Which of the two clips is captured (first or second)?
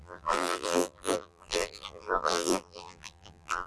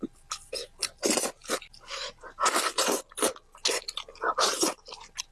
second